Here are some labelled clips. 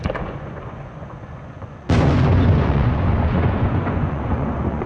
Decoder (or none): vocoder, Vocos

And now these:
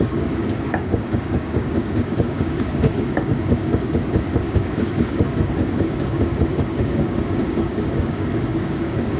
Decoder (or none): codec, DAC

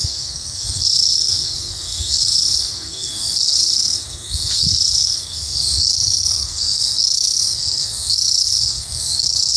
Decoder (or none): codec, SNAC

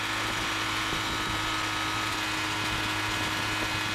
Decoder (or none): none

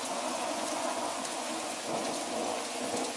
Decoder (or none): vocoder, Vocos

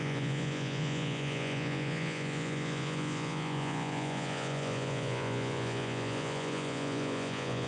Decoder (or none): vocoder, Vocos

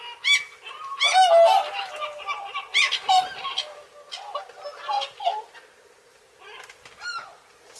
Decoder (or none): none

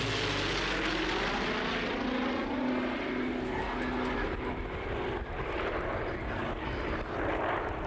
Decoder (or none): none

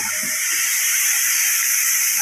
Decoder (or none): vocoder, BigVGAN v2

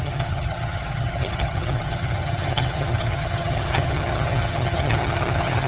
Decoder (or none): vocoder, HiFi-GAN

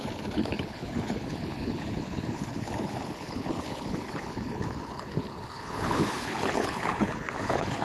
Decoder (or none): codec, HILCodec